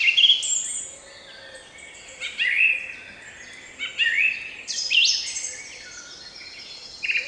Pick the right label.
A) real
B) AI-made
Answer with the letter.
A